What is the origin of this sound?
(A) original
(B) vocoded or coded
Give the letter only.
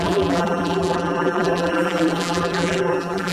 B